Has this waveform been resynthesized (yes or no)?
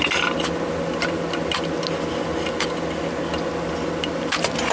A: no